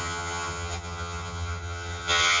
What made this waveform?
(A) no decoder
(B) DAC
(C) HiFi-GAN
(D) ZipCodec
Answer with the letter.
C